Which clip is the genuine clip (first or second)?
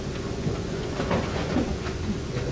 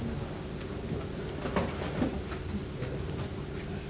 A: second